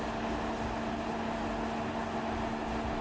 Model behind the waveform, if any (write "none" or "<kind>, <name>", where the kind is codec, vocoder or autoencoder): none